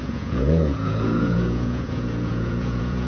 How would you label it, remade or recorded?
remade